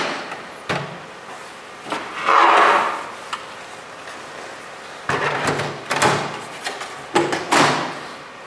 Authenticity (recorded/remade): recorded